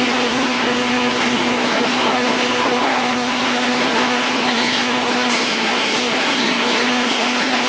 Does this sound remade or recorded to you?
remade